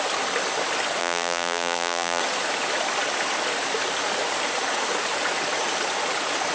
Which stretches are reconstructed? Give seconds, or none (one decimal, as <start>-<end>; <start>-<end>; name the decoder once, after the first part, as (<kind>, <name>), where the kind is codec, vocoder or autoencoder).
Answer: 1.0-2.2 (vocoder, BigVGAN v2)